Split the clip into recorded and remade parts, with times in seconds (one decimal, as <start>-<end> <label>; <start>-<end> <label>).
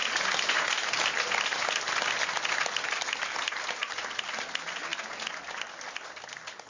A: 0.0-6.7 recorded